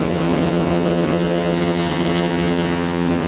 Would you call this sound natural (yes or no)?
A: no